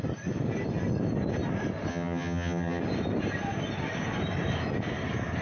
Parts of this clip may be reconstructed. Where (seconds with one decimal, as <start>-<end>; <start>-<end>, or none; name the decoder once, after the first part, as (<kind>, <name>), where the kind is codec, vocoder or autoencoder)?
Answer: 1.9-2.8 (vocoder, HiFi-GAN)